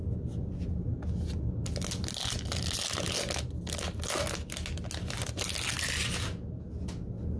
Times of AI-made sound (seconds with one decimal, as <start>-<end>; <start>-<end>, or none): none